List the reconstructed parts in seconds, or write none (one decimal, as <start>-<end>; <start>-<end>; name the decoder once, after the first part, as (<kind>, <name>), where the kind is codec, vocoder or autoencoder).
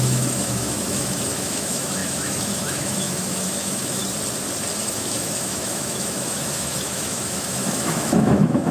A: 0.0-4.0 (autoencoder, DAC-VAE); 4.8-8.7